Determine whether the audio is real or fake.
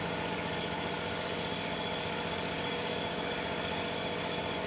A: fake